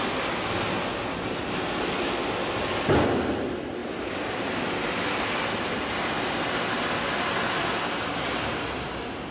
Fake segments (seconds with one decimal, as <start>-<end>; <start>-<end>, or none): none